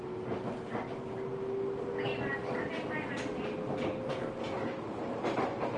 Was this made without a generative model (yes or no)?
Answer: yes